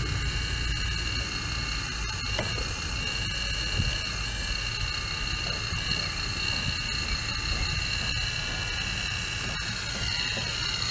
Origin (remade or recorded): recorded